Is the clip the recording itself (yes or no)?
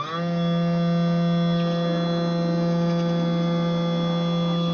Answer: yes